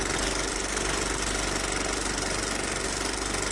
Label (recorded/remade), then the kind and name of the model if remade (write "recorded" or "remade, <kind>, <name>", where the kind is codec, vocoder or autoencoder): recorded